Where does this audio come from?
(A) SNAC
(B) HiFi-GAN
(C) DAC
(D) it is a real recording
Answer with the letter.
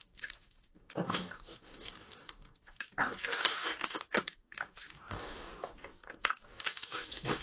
C